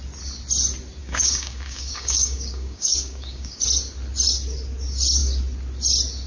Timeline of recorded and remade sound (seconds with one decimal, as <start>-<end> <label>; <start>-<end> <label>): 0.0-1.0 recorded; 1.0-3.6 remade; 3.6-6.3 recorded